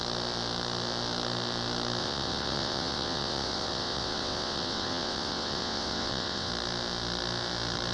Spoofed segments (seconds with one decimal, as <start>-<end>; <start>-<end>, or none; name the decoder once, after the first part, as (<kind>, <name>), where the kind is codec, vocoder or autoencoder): 2.0-6.5 (vocoder, WaveNeXt)

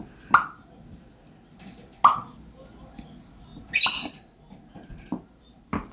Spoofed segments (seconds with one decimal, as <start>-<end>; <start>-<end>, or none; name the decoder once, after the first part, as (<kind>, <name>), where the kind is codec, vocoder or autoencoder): none

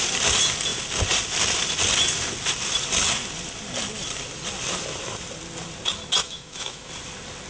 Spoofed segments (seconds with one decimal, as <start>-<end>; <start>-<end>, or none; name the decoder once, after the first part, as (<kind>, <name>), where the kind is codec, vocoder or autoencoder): 6.2-6.9 (autoencoder, DAC-VAE)

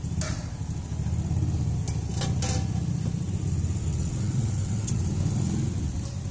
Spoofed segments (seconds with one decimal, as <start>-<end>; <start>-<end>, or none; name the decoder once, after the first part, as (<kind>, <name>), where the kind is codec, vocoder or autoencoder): 3.9-5.0 (vocoder, WaveNeXt)